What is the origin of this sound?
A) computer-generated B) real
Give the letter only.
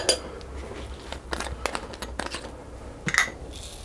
B